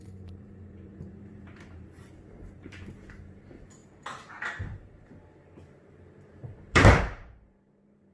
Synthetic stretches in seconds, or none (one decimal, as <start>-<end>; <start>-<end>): 0.0-8.1

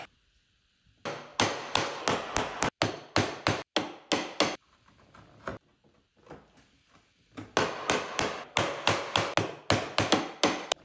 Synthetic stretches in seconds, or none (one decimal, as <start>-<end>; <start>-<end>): none

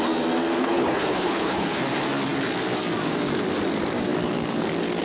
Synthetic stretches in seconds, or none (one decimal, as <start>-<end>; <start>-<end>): 0.6-1.8

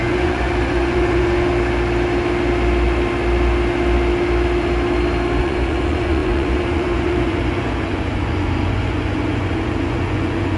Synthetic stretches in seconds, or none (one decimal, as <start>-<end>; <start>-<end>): 0.0-1.5; 5.4-10.6

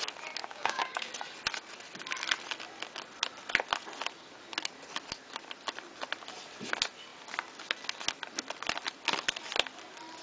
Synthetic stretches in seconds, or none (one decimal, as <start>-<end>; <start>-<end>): 0.4-1.1

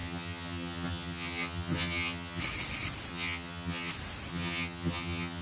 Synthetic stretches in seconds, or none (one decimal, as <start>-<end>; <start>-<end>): 0.0-2.4; 3.1-3.9; 4.3-5.4

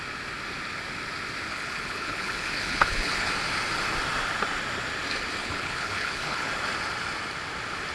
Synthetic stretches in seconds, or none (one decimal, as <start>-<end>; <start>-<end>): 1.5-3.3; 5.4-6.5

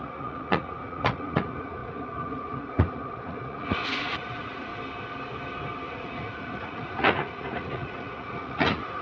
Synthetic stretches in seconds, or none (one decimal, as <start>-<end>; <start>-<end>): 0.0-4.7; 5.9-9.0